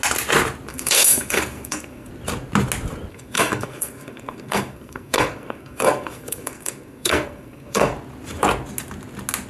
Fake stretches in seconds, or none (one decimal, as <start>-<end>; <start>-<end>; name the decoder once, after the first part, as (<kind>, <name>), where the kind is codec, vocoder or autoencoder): 0.7-2.1 (codec, SNAC); 3.1-7.9